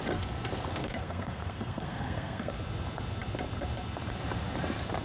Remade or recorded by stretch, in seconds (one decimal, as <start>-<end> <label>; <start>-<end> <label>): 0.0-0.7 recorded; 0.7-2.5 remade; 2.5-5.0 recorded